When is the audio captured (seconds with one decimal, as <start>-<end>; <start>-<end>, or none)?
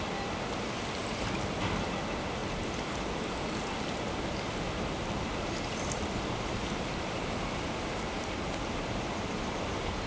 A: 0.0-10.1